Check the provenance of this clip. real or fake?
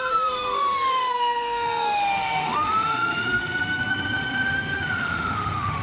fake